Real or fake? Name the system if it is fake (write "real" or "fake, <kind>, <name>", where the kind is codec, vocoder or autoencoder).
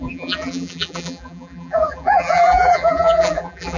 fake, vocoder, BigVGAN v2